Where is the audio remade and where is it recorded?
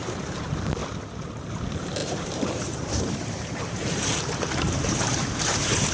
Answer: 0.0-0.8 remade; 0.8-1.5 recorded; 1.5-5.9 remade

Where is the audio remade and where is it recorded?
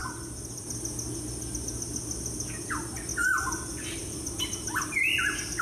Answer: 0.0-3.1 recorded; 3.1-4.3 remade; 4.3-5.6 recorded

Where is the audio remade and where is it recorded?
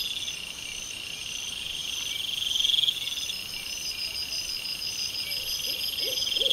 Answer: 0.0-6.5 recorded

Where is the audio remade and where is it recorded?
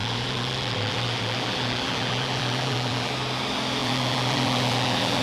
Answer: 0.0-3.1 remade; 3.1-3.8 recorded; 3.8-5.2 remade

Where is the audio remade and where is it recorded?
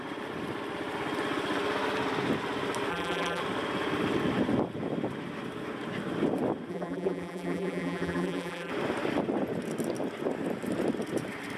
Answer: 0.0-2.9 recorded; 2.9-3.4 remade; 3.4-6.7 recorded; 6.7-8.7 remade; 8.7-11.6 recorded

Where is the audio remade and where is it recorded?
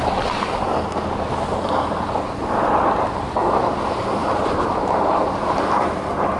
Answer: 0.0-0.7 remade; 0.7-3.6 recorded; 3.6-6.4 remade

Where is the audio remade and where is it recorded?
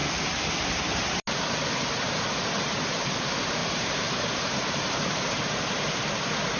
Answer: 0.0-3.6 recorded; 3.6-4.9 remade; 4.9-6.6 recorded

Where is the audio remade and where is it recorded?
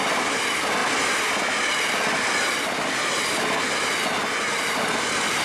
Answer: 0.0-5.4 recorded